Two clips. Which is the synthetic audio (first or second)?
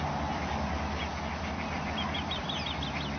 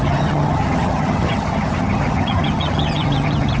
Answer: second